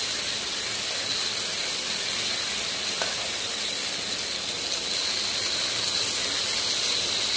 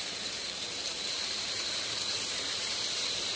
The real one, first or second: first